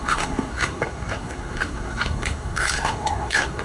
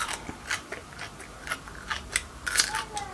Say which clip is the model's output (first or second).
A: first